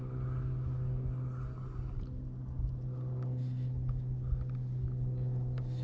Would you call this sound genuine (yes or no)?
yes